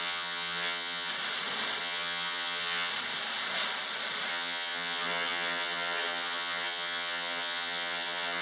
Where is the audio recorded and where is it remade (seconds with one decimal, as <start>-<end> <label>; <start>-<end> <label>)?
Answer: 0.0-1.1 remade; 1.1-1.8 recorded; 1.8-2.9 remade; 2.9-4.3 recorded; 4.3-8.4 remade